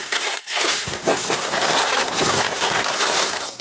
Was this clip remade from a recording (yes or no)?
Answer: yes